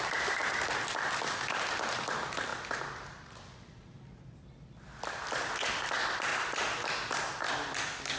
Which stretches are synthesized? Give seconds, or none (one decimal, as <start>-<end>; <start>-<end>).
none